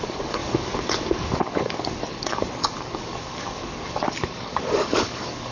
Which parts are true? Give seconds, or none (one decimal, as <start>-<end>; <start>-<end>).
none